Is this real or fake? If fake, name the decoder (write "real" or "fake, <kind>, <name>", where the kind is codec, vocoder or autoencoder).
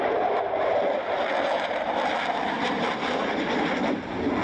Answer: real